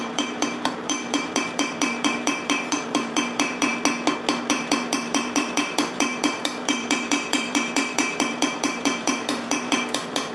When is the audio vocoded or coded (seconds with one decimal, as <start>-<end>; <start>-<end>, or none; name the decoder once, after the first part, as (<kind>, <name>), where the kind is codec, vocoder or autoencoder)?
0.0-3.7 (vocoder, BigVGAN v2); 4.5-10.3